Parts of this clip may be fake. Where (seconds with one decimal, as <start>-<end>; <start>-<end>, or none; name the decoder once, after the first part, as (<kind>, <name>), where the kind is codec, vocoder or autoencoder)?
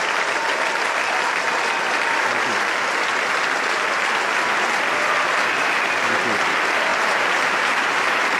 6.9-7.7 (vocoder, BigVGAN v2)